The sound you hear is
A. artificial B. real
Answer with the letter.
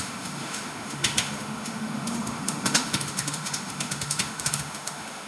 A